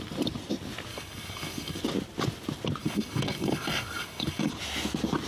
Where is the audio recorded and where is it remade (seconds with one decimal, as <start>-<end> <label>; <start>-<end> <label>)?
0.0-0.9 recorded; 0.9-1.8 remade; 1.8-2.8 recorded; 2.8-4.5 remade; 4.5-5.3 recorded